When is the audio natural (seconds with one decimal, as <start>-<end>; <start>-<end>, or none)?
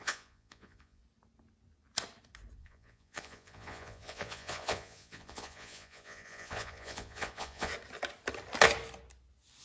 1.0-2.6; 7.7-9.6